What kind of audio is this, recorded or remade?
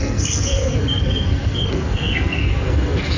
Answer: remade